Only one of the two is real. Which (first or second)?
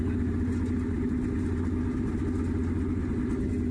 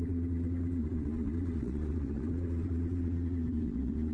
first